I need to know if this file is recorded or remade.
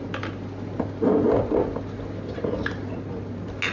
recorded